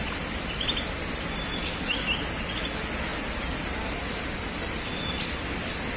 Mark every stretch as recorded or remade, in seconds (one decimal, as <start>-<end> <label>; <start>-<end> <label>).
0.0-3.1 recorded; 3.1-3.6 remade; 3.6-4.0 recorded; 4.0-4.8 remade; 4.8-6.0 recorded